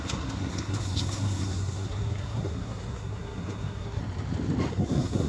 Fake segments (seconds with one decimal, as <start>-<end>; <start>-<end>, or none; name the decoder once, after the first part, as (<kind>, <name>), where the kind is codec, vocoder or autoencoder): 0.0-4.0 (codec, SNAC); 4.7-5.3